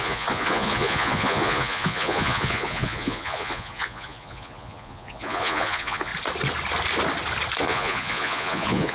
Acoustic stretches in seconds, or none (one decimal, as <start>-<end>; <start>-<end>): 6.1-7.6